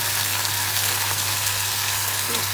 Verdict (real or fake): fake